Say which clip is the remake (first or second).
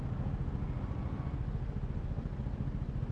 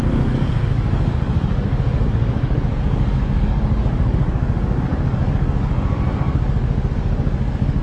second